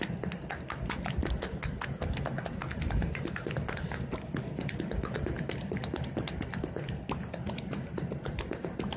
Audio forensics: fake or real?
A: real